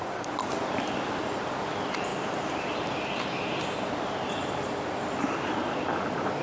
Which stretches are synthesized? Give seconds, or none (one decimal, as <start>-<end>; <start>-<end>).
none